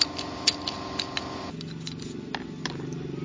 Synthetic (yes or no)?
no